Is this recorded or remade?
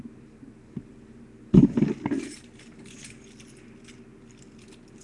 recorded